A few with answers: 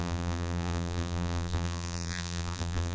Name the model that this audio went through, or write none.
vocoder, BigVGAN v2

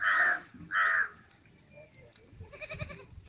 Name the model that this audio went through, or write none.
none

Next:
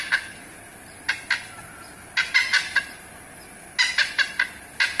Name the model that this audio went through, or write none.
none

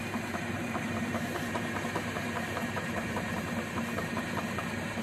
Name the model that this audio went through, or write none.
vocoder, BigVGAN v2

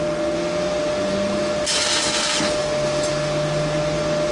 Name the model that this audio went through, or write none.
none